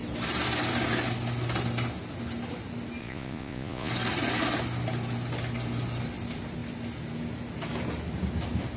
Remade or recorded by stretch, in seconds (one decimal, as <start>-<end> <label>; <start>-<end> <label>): 0.0-3.0 recorded; 3.0-3.9 remade; 3.9-8.8 recorded